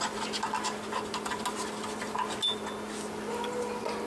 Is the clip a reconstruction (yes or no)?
no